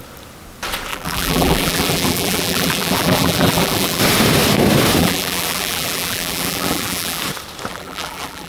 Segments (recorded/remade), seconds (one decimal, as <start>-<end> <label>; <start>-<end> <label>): 0.0-0.9 recorded; 0.9-4.0 remade; 4.0-5.0 recorded; 5.0-7.2 remade; 7.2-7.7 recorded; 7.7-8.5 remade

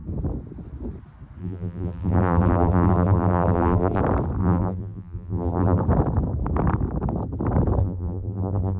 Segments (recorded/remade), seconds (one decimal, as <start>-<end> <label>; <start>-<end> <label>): 0.0-1.4 recorded; 1.4-4.0 remade; 4.0-4.4 recorded; 4.4-5.8 remade; 5.8-7.8 recorded; 7.8-8.8 remade

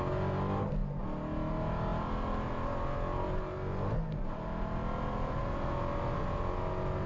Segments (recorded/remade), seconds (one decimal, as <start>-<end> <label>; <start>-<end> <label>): 0.0-7.1 recorded

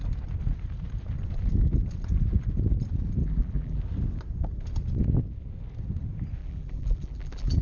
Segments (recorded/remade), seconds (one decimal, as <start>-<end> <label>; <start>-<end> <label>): 0.0-3.2 recorded; 3.2-3.8 remade; 3.8-6.4 recorded; 6.4-7.6 remade

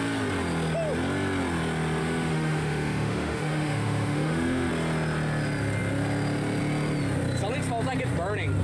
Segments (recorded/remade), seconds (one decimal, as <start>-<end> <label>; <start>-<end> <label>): 0.0-2.0 recorded; 2.0-4.7 remade; 4.7-8.6 recorded